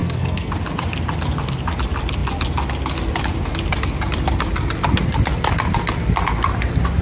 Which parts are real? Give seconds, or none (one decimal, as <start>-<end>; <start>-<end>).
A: 0.5-7.0